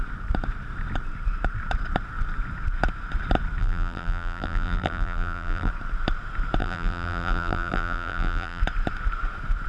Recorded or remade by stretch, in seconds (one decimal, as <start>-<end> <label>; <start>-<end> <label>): 0.0-3.6 recorded; 3.6-5.7 remade; 5.7-6.6 recorded; 6.6-8.6 remade; 8.6-9.7 recorded